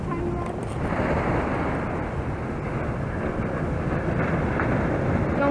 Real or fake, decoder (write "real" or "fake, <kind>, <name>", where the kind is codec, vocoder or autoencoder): real